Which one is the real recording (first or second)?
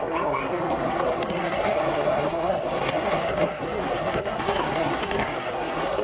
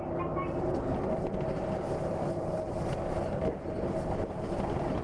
second